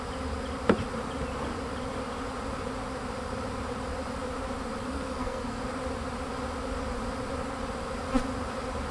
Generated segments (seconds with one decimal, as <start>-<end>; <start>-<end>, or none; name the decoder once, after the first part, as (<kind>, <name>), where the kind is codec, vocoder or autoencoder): 4.8-5.6 (codec, SNAC)